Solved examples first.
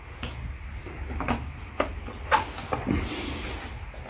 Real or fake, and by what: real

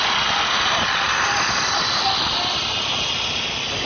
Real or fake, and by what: real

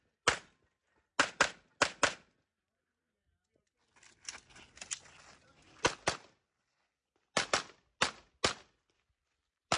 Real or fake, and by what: real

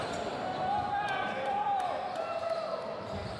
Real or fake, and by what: real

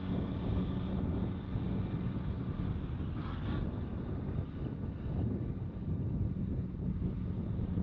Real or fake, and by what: real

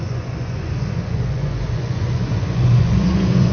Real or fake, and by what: fake, vocoder, Vocos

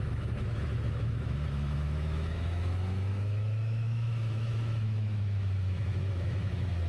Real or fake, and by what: fake, autoencoder, DAC-VAE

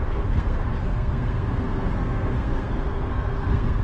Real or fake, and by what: fake, codec, SNAC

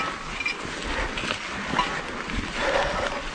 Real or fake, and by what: real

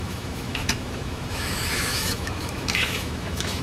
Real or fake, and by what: fake, autoencoder, DAC-VAE